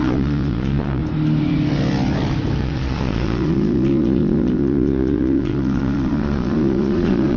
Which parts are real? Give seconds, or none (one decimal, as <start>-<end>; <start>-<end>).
1.0-2.6